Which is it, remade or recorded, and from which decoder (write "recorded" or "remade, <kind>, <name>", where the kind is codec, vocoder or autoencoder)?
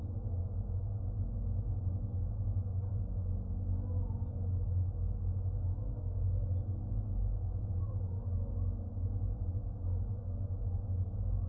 recorded